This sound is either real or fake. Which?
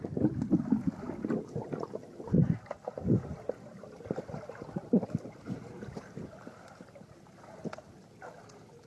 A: real